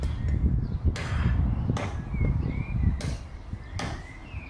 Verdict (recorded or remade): recorded